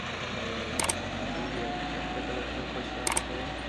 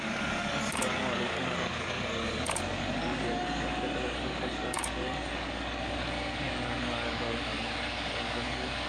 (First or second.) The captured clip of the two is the first